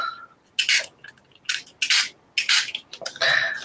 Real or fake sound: real